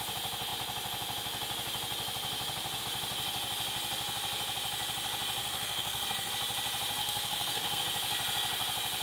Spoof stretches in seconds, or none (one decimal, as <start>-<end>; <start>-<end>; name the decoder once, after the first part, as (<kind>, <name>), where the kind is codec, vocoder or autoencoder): 5.4-6.3 (codec, SNAC); 7.0-7.8